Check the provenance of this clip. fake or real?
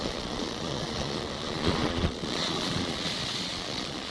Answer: fake